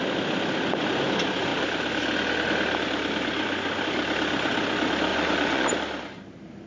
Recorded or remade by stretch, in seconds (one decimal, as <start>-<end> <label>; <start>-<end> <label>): 0.0-5.1 recorded; 5.1-5.7 remade; 5.7-6.7 recorded